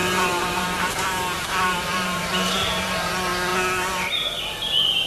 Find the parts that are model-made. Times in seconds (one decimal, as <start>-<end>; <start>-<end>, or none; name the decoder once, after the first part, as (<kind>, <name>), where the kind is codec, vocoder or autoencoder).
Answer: 0.0-3.1 (vocoder, BigVGAN v2)